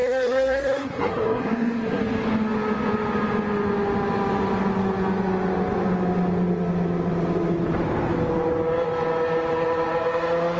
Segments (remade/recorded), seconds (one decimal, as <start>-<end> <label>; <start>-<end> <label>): 0.0-2.0 remade; 2.0-10.6 recorded